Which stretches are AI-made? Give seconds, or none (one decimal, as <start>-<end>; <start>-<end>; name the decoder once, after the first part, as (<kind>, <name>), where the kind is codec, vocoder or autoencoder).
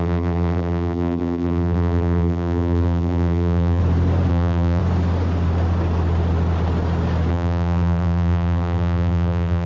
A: 0.0-3.8 (vocoder, BigVGAN v2); 4.3-4.8; 7.3-9.7